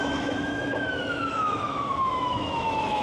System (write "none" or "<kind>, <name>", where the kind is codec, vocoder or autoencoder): autoencoder, DAC-VAE